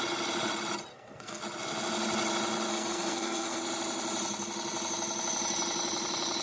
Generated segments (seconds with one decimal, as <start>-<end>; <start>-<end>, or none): 0.9-1.4; 2.7-3.6